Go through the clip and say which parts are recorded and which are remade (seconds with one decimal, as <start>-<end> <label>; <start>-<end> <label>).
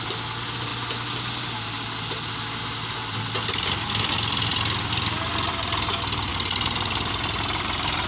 0.0-8.1 recorded